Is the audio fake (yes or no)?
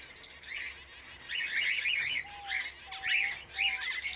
no